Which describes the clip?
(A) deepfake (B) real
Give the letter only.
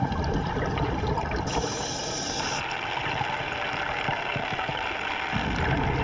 B